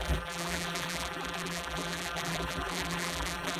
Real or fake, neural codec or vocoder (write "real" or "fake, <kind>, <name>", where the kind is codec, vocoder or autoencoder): fake, vocoder, BigVGAN v2